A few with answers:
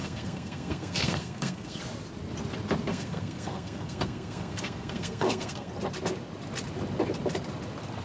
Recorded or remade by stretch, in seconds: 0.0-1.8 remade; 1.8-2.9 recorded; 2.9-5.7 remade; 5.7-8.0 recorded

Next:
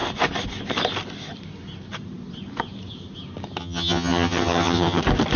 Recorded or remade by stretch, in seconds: 0.0-3.6 recorded; 3.6-5.0 remade; 5.0-5.4 recorded

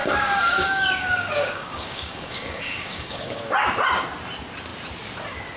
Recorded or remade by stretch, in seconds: 0.0-3.4 remade; 3.4-5.6 recorded

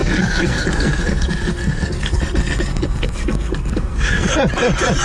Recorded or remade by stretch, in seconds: 0.0-2.2 remade; 2.2-2.7 recorded; 2.7-4.3 remade; 4.3-5.0 recorded

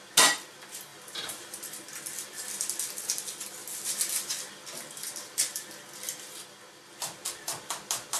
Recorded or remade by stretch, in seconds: 0.0-0.9 recorded; 0.9-1.6 remade; 1.6-8.2 recorded